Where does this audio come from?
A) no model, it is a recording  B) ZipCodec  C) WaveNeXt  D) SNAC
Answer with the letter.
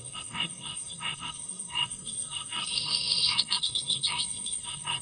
D